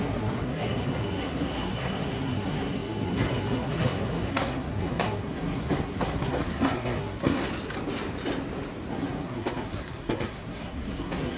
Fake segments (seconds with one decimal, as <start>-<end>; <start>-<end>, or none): 0.0-7.5; 8.9-11.4